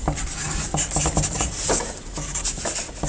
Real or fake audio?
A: real